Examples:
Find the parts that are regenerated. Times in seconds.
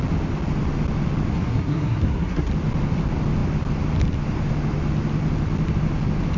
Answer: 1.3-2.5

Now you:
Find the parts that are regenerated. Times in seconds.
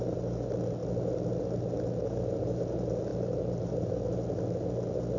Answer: none